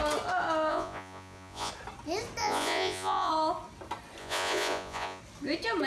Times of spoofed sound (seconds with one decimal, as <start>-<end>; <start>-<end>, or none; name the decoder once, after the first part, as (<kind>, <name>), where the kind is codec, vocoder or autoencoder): 0.7-1.7 (vocoder, Vocos); 2.4-3.3; 4.2-5.2